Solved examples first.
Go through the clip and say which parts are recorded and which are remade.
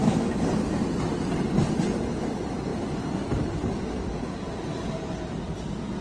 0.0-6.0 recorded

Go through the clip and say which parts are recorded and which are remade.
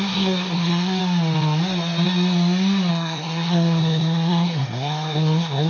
0.0-1.0 remade; 1.0-2.9 recorded; 2.9-5.7 remade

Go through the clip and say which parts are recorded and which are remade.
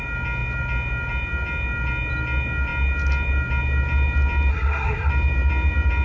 0.0-4.5 recorded; 4.5-5.1 remade; 5.1-6.0 recorded